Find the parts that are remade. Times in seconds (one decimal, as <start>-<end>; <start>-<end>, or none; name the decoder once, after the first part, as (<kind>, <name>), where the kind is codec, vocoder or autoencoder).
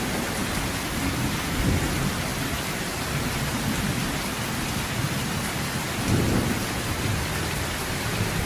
none